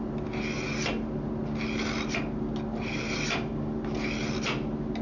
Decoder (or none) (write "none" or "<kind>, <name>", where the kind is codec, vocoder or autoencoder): none